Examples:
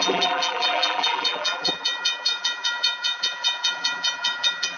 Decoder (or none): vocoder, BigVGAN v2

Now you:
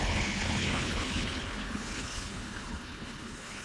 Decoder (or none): codec, HILCodec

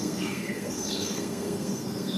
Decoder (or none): codec, SNAC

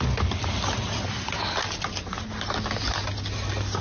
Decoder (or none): none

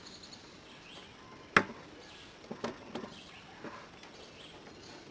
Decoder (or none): none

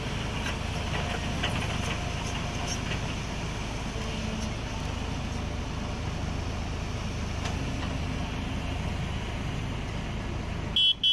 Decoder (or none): none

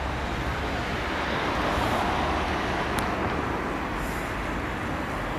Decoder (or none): none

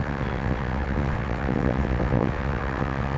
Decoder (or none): vocoder, WaveNeXt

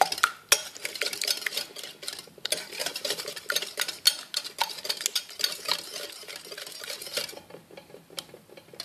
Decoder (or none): none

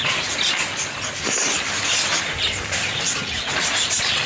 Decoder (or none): none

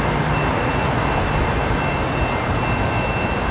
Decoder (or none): none